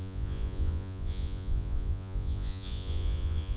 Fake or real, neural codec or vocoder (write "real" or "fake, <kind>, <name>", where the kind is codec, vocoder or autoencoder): fake, vocoder, Vocos